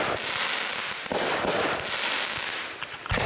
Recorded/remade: recorded